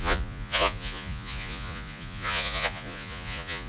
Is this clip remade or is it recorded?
remade